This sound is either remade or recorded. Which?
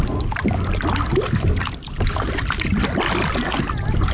recorded